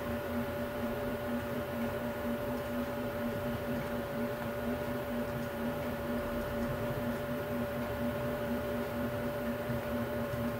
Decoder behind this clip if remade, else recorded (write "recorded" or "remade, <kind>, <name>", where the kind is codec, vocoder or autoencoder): remade, vocoder, BigVGAN v2